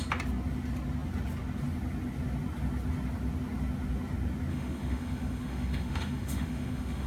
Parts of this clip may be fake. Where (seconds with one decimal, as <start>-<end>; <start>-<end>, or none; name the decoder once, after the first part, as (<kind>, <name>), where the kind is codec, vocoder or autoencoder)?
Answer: 4.5-7.1 (autoencoder, DAC-VAE)